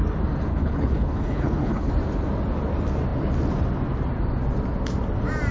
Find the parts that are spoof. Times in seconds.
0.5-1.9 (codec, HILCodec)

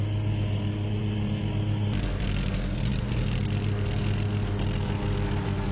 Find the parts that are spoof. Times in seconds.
none

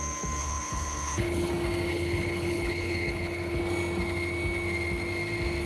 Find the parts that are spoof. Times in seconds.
0.4-1.5 (codec, HILCodec); 1.9-3.6